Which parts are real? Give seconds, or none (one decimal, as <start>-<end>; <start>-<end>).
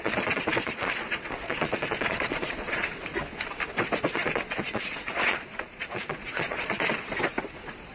3.1-4.1; 6.9-7.9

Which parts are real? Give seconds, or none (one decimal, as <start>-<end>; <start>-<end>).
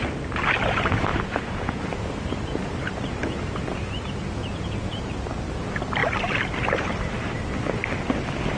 0.0-1.1; 1.8-4.4; 5.1-8.6